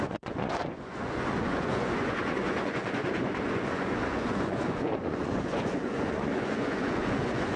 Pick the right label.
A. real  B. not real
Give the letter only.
B